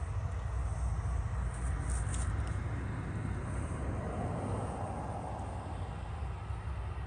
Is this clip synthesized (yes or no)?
no